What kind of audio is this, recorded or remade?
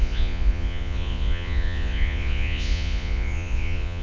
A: remade